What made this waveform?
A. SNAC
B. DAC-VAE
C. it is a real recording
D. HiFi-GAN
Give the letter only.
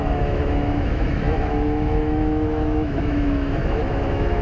B